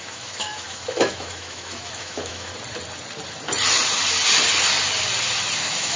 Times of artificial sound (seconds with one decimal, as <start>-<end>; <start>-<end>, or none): 0.0-2.5; 5.6-6.0